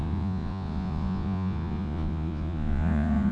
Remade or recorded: remade